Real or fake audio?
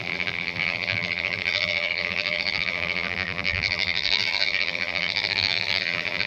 fake